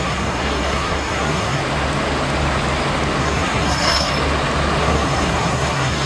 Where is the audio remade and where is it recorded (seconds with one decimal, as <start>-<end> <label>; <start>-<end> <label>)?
0.0-1.6 remade; 1.6-3.2 recorded; 3.2-4.1 remade; 4.1-4.8 recorded; 4.8-6.1 remade